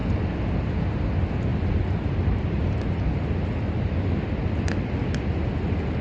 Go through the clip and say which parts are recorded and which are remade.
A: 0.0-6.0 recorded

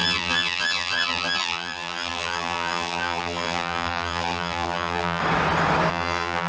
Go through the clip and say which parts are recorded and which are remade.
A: 0.0-5.2 remade; 5.2-5.9 recorded; 5.9-6.5 remade

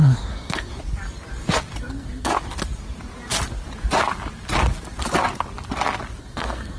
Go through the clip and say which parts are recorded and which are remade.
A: 0.0-0.7 remade; 0.7-1.8 recorded; 1.8-2.3 remade; 2.3-6.2 recorded; 6.2-6.8 remade

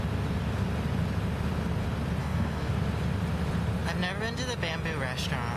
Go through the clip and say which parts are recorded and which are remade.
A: 0.0-2.2 recorded; 2.2-2.7 remade; 2.7-5.6 recorded

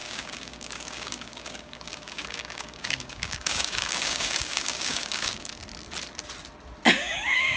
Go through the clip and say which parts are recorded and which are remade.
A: 0.0-5.6 remade; 5.6-6.9 recorded; 6.9-7.6 remade

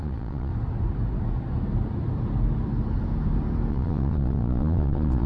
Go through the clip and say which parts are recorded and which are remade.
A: 0.0-0.5 remade; 0.5-3.7 recorded; 3.7-5.3 remade

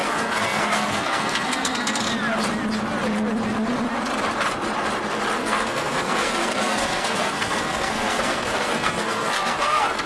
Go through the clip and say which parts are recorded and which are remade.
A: 0.0-2.0 remade; 2.0-5.4 recorded; 5.4-10.1 remade

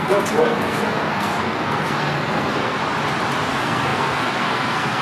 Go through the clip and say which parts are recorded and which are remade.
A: 0.0-2.8 remade; 2.8-3.5 recorded; 3.5-5.0 remade